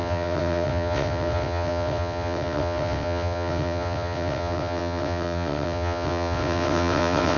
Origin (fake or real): fake